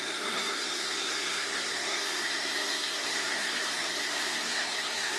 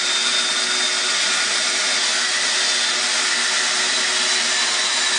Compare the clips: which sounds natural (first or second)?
second